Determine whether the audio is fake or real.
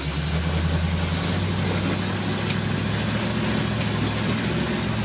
real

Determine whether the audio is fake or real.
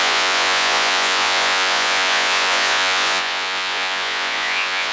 fake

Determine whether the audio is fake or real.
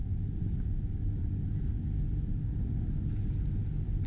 real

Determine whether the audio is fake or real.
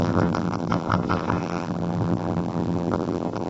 fake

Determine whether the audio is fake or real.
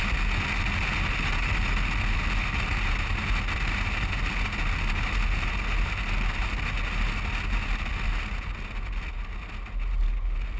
real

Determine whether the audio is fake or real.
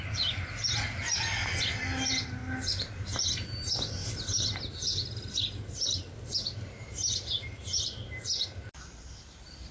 real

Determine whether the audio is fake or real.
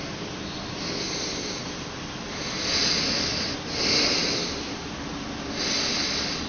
real